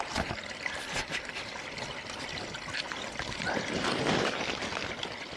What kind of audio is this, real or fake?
real